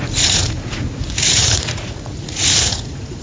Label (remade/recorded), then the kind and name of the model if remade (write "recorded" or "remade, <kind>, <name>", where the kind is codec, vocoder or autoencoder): remade, vocoder, Vocos